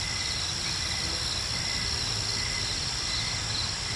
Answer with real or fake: real